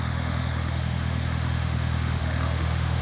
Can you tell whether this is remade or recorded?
remade